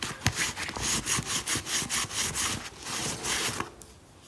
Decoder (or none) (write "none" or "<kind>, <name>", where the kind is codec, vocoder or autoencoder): none